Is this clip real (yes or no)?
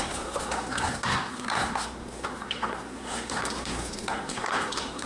no